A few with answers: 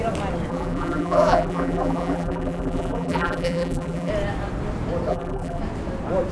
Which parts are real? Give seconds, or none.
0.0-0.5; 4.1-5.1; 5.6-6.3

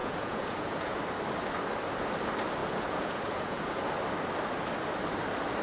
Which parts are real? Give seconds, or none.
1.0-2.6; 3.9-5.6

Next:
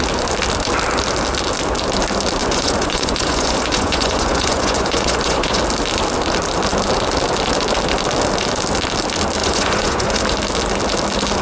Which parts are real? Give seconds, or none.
0.0-2.4; 5.6-9.4; 10.2-11.4

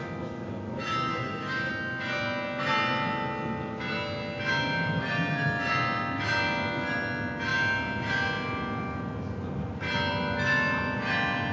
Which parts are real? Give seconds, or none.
0.0-1.1; 1.7-11.5

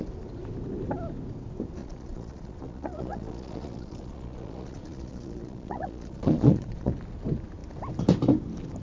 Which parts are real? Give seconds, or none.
0.0-1.8; 6.9-8.8

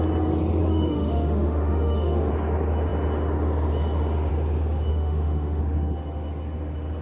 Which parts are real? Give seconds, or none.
0.0-0.6; 2.3-4.9; 5.6-7.0